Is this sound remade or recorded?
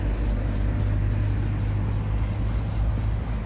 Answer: recorded